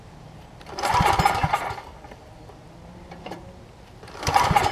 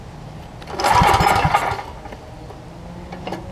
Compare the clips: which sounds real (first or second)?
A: second